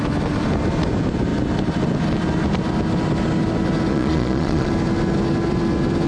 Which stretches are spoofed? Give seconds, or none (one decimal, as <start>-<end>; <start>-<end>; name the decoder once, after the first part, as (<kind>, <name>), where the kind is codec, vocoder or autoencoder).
3.9-4.7 (vocoder, Vocos)